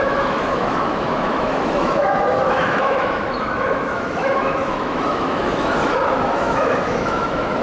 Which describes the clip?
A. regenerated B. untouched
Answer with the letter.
A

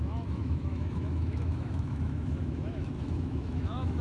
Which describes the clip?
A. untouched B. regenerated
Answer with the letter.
B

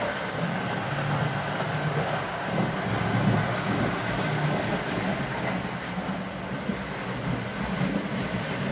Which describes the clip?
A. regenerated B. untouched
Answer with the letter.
B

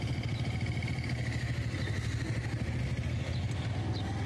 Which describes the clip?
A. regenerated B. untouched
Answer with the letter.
B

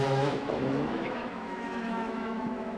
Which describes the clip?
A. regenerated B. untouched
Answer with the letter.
A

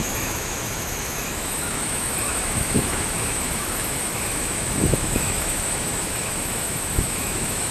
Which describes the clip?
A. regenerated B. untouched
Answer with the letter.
A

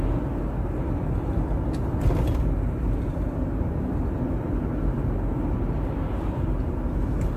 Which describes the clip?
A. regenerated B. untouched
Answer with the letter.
B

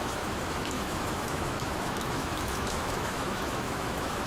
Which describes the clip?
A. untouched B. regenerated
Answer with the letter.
B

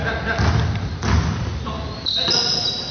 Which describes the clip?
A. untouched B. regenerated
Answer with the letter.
A